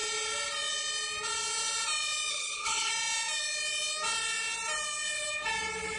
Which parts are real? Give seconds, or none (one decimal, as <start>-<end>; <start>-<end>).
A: 0.0-2.3; 2.9-6.0